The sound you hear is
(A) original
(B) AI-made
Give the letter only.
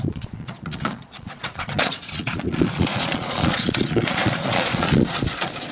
B